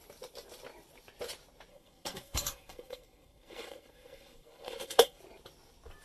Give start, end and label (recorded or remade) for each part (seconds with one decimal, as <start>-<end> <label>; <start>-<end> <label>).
0.0-1.7 recorded; 1.7-5.2 remade; 5.2-6.0 recorded